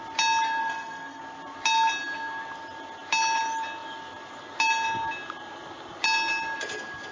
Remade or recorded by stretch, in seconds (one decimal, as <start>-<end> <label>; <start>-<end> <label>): 0.0-0.6 recorded; 0.6-1.2 remade; 1.2-7.1 recorded